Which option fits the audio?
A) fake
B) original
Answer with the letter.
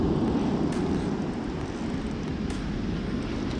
B